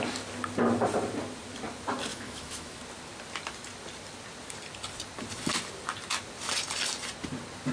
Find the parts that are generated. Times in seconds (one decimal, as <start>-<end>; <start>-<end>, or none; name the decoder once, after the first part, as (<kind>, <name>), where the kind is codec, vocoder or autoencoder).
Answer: 2.1-2.8 (autoencoder, DAC-VAE)